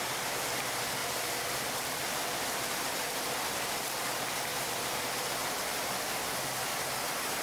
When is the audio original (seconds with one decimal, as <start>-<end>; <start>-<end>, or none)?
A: 0.0-1.0; 2.1-4.5; 6.3-7.4